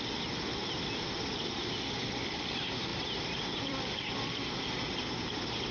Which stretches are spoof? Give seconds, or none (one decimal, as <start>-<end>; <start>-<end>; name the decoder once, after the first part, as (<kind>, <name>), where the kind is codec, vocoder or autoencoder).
0.6-2.5 (vocoder, BigVGAN v2); 2.9-4.4